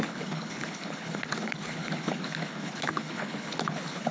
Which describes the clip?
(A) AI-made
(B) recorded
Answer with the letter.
A